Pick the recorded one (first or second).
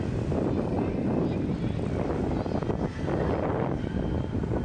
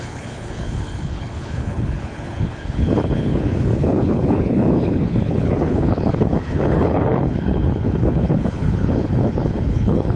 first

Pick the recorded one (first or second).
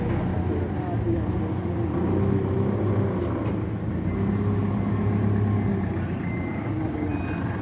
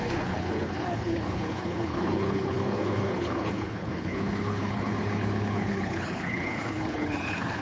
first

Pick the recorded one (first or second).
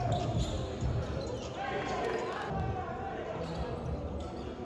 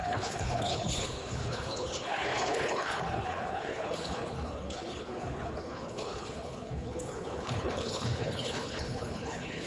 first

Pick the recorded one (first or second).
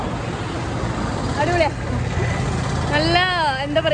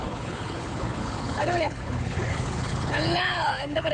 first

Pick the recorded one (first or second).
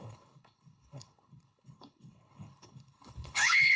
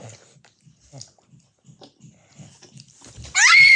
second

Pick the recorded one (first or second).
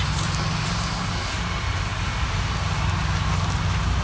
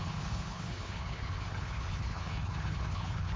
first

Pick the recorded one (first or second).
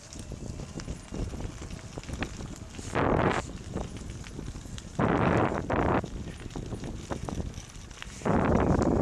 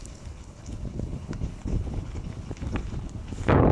first